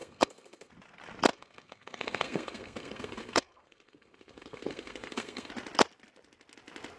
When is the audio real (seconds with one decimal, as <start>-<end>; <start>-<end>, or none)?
0.7-1.3; 5.5-7.0